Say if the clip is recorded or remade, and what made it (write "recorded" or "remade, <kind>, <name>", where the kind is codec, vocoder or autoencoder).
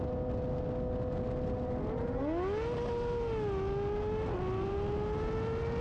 recorded